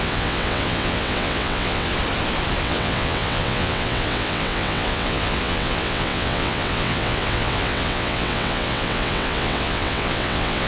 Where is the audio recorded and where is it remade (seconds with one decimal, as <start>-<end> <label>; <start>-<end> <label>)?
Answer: 0.0-1.9 remade; 1.9-2.6 recorded; 2.6-10.7 remade